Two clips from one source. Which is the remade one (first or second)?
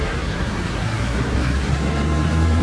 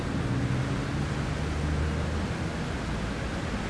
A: first